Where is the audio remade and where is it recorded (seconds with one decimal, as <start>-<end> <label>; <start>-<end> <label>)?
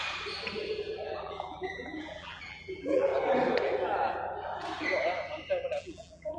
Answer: 0.0-1.2 recorded; 1.2-3.1 remade; 3.1-5.8 recorded; 5.8-6.4 remade